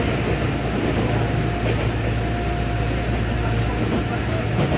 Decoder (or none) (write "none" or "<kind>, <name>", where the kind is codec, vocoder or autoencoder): none